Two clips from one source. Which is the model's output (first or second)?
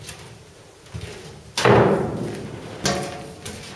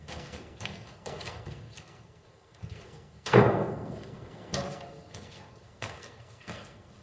second